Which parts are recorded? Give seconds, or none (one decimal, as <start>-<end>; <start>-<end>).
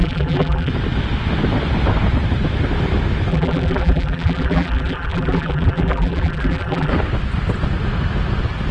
0.7-3.3; 6.9-8.7